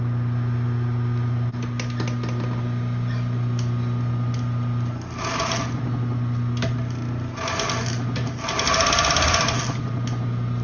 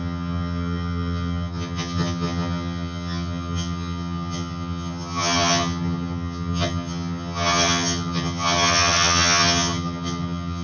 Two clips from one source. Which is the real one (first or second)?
first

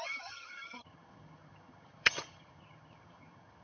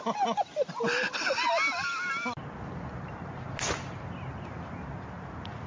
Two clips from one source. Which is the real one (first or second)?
second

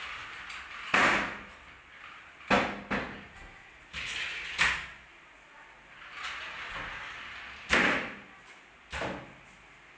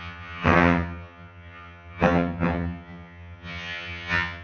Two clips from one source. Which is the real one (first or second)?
first